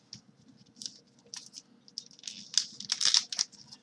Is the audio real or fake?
real